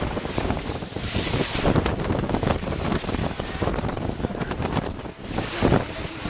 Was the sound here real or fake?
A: fake